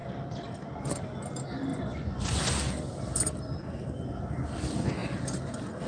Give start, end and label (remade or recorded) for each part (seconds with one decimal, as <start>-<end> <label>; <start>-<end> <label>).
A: 0.0-1.7 recorded; 1.7-2.4 remade; 2.4-5.9 recorded